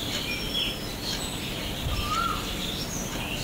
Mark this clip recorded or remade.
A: recorded